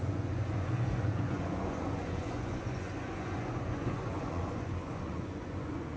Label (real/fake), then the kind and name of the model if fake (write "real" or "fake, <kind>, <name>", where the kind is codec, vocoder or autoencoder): fake, vocoder, Vocos